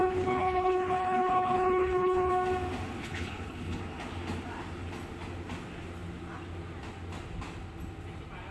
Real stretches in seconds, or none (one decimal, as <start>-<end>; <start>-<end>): 2.3-3.0; 3.8-8.5